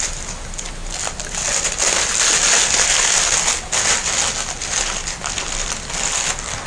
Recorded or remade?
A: recorded